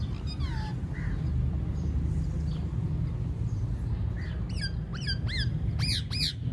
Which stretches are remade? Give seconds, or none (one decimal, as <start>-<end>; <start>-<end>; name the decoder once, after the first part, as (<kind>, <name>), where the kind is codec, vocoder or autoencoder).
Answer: none